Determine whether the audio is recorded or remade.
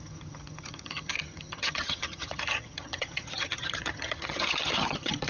remade